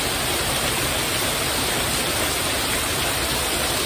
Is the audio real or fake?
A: real